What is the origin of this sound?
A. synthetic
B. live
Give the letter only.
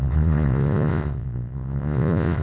A